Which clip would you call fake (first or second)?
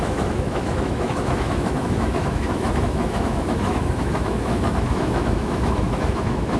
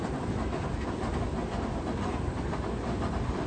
first